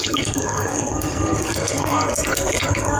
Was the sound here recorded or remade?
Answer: remade